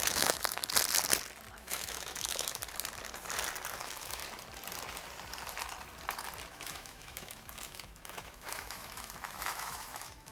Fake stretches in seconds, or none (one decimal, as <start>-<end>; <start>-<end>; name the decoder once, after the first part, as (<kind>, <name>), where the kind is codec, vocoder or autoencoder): 0.0-0.6 (autoencoder, DAC-VAE); 1.6-2.6; 3.8-4.2; 6.5-10.3